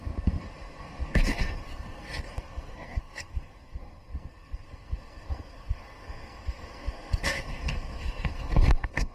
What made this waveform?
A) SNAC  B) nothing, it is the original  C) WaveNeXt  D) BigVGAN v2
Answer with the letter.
A